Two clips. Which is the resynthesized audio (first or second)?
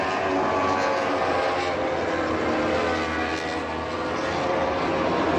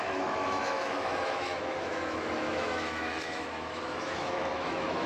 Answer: second